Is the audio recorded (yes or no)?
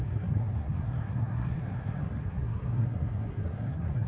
no